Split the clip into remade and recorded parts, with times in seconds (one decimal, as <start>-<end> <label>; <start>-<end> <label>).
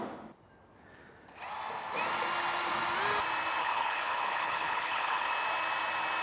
0.0-3.6 recorded; 3.6-5.3 remade; 5.3-6.2 recorded